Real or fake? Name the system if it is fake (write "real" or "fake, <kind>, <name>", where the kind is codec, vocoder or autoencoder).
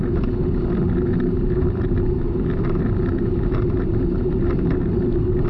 real